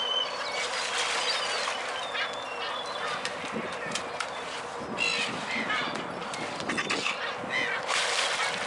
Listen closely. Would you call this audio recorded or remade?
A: recorded